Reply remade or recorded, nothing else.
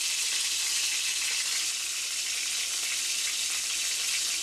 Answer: recorded